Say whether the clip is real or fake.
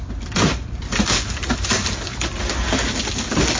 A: real